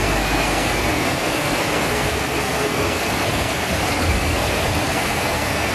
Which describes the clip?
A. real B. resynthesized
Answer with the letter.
B